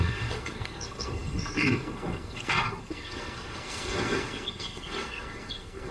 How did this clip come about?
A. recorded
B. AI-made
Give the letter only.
B